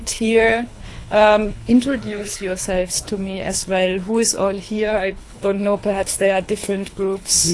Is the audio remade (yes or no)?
yes